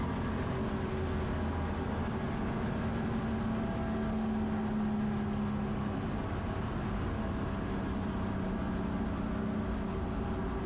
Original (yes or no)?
yes